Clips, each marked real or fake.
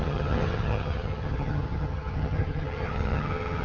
fake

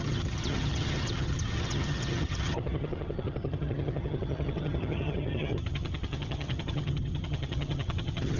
fake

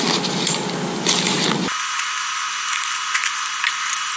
real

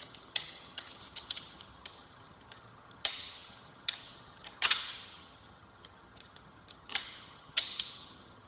fake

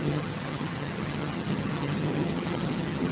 fake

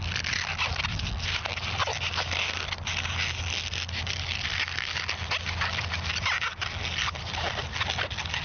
real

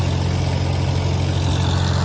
real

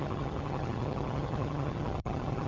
fake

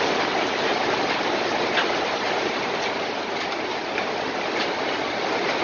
real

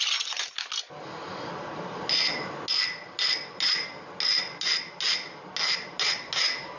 real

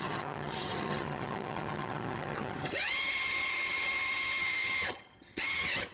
fake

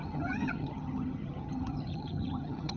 fake